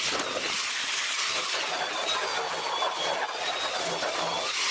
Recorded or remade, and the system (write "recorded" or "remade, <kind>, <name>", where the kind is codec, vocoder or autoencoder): recorded